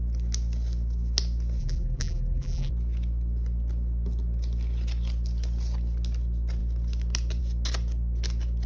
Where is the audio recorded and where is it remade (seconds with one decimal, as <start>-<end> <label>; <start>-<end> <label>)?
0.0-1.6 recorded; 1.6-2.7 remade; 2.7-8.7 recorded